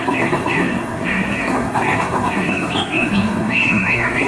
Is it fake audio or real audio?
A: fake